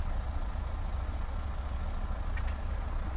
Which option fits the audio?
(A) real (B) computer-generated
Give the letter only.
B